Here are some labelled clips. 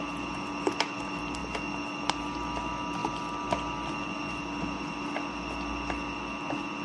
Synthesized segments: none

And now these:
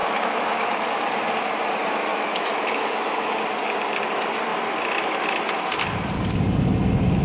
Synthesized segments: 0.0-0.8; 2.1-3.4